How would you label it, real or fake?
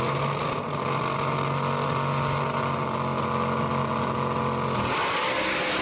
real